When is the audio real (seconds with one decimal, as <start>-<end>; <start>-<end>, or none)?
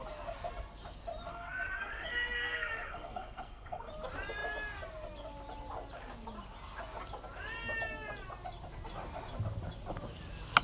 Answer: 0.0-1.3; 3.9-10.6